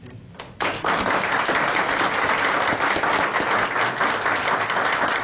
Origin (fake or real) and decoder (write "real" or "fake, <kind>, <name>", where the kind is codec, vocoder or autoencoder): real